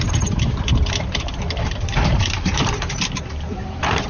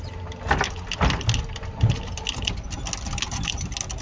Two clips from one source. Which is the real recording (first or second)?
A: second